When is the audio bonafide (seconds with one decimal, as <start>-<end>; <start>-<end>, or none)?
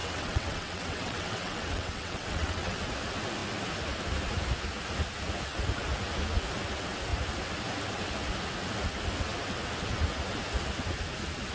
2.8-11.5